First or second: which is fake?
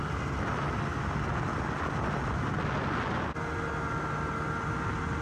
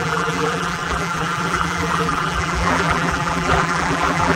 second